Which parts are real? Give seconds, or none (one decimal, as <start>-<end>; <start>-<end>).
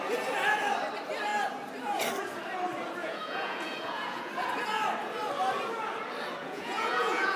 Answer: 0.0-3.0; 4.3-6.4